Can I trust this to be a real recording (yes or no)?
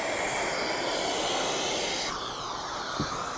yes